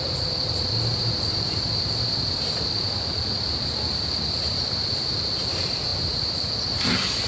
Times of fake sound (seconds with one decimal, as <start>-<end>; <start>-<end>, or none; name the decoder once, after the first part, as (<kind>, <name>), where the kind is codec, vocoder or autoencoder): 0.9-5.3 (vocoder, BigVGAN v2); 5.9-6.5